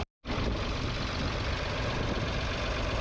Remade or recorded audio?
recorded